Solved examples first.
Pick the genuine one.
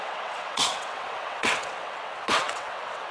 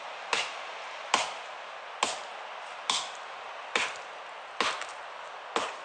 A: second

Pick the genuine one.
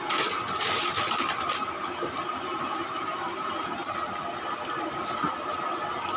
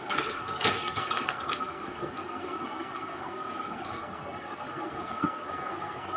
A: first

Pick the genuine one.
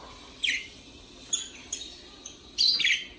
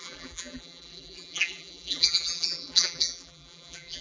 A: first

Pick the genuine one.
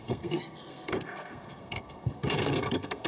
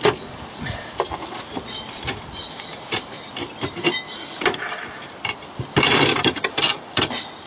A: second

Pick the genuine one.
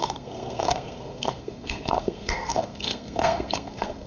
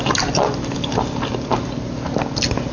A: second